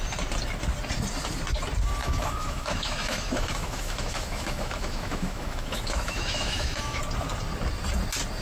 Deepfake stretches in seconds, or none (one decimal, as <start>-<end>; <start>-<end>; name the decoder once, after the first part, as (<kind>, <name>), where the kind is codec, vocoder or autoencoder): 2.0-7.0 (autoencoder, DAC-VAE)